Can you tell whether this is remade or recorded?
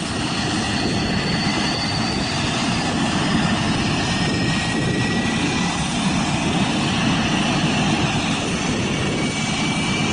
recorded